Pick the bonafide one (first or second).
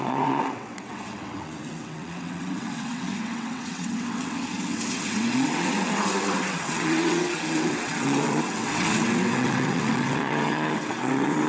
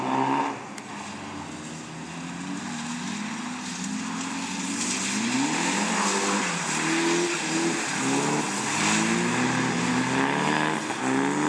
second